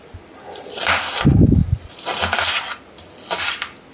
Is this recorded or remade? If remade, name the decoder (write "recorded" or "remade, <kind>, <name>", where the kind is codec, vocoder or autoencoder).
recorded